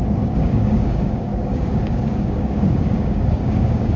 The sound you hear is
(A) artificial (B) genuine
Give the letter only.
A